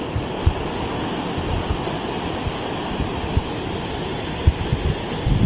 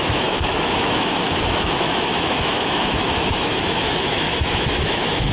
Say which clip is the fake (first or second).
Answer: second